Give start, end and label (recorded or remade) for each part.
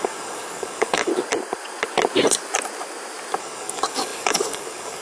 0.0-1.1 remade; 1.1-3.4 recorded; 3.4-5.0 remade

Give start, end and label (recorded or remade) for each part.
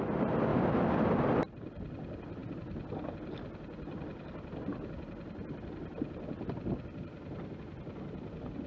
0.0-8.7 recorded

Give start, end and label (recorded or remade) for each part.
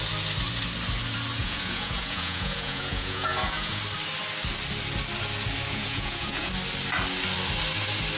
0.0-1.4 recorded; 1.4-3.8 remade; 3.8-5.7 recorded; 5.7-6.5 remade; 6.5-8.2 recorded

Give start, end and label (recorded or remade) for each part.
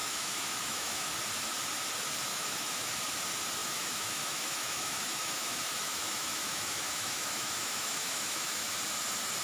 0.0-1.1 remade; 1.1-2.3 recorded; 2.3-3.0 remade; 3.0-3.6 recorded; 3.6-8.8 remade; 8.8-9.4 recorded